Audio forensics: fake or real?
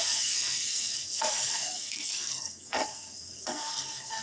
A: fake